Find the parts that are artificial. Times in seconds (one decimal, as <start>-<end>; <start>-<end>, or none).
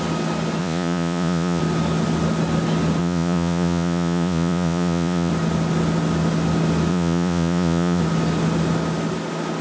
0.6-1.6; 3.0-5.3; 6.9-8.0